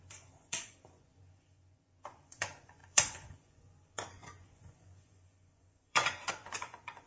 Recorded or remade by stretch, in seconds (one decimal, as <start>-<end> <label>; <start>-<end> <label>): 0.0-7.1 remade